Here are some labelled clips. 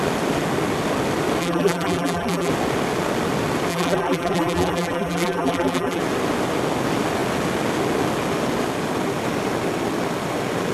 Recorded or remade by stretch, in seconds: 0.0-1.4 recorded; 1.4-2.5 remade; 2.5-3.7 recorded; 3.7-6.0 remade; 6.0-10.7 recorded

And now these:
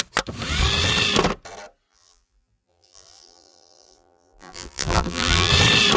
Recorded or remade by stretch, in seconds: 0.0-1.9 recorded; 1.9-5.5 remade; 5.5-6.0 recorded

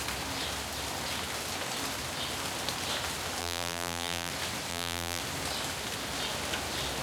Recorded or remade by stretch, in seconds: 0.0-3.4 recorded; 3.4-4.3 remade; 4.3-4.7 recorded; 4.7-5.2 remade; 5.2-7.0 recorded

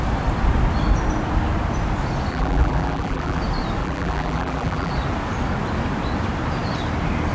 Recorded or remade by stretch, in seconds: 0.0-2.3 recorded; 2.3-3.4 remade; 3.4-3.8 recorded; 3.8-4.9 remade; 4.9-7.3 recorded

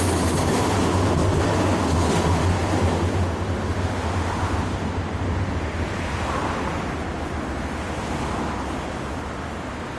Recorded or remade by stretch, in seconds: 0.0-10.0 recorded

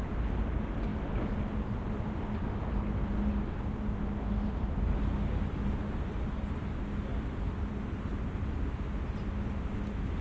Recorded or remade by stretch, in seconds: 0.0-4.4 recorded; 4.4-5.8 remade; 5.8-7.1 recorded; 7.1-8.5 remade; 8.5-10.2 recorded

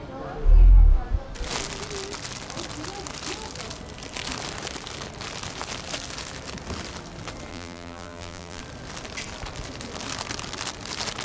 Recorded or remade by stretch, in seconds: 0.0-7.5 recorded; 7.5-8.6 remade; 8.6-11.2 recorded

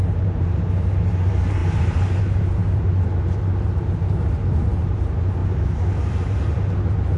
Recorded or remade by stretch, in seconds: 0.0-5.4 remade; 5.4-6.1 recorded; 6.1-7.2 remade